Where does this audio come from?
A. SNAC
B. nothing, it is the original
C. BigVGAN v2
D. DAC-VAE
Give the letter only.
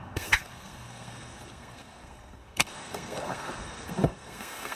A